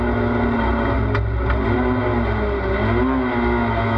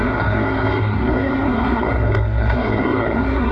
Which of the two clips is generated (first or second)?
second